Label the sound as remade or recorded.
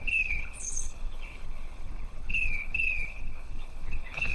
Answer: remade